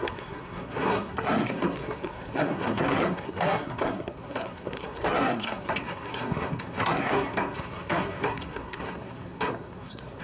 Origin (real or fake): fake